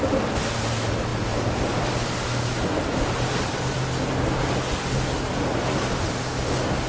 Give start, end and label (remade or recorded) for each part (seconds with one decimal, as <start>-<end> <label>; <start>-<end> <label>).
0.0-6.9 recorded

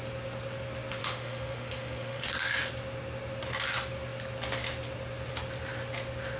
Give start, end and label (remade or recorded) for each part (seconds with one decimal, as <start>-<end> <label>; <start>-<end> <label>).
0.0-1.0 recorded; 1.0-2.3 remade; 2.3-6.4 recorded